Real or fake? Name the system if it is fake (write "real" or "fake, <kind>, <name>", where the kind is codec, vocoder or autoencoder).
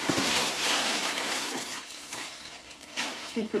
fake, codec, SNAC